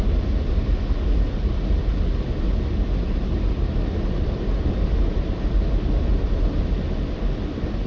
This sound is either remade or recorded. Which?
recorded